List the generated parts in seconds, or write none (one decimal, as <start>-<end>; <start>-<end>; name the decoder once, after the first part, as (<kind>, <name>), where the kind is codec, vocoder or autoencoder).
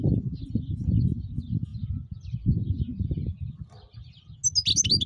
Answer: 0.0-1.7 (vocoder, BigVGAN v2)